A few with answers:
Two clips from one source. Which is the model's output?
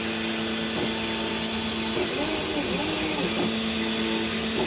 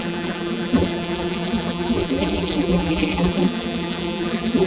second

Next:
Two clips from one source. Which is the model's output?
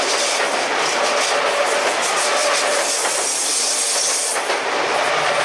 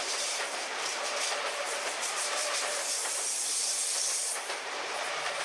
second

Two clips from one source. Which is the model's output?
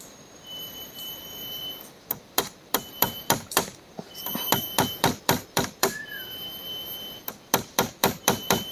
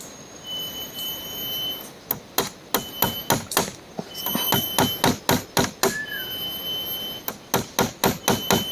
first